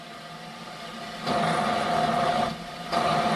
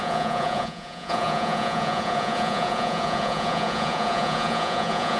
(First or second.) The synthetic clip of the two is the second